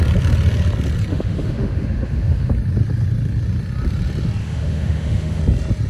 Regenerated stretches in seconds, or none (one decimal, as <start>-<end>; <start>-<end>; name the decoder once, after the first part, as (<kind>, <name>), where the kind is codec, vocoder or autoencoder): 1.1-2.5 (autoencoder, DAC-VAE); 4.4-5.4